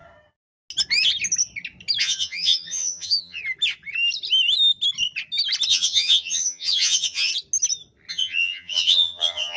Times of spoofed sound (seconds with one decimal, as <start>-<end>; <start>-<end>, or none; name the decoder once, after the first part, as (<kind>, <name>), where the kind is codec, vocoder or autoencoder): 2.0-3.4 (vocoder, HiFi-GAN); 5.7-7.3; 8.1-9.6